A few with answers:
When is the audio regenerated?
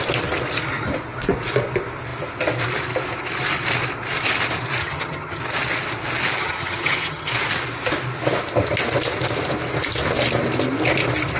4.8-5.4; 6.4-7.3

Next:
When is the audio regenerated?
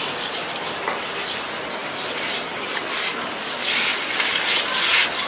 none